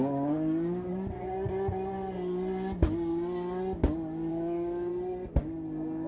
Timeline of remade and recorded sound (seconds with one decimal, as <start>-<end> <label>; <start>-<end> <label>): 0.0-0.9 remade; 0.9-4.3 recorded; 4.3-4.9 remade; 4.9-6.1 recorded